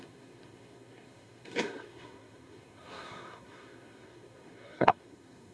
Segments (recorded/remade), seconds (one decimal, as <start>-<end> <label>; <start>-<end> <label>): 0.0-5.5 remade